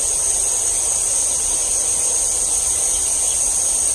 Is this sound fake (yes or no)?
no